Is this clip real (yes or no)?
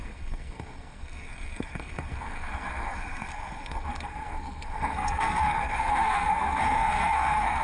no